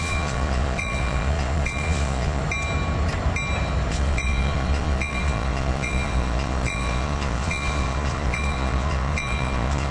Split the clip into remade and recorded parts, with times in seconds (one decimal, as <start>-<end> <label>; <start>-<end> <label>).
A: 0.0-2.4 remade; 2.4-3.9 recorded; 3.9-9.9 remade